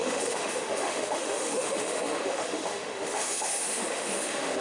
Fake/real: fake